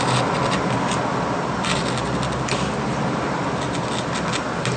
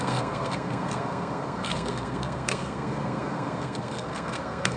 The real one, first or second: first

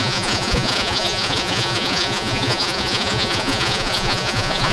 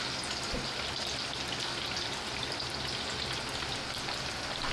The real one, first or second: second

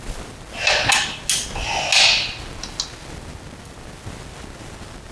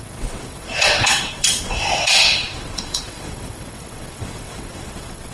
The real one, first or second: first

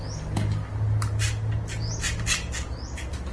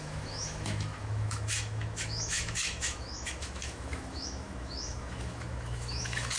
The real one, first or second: first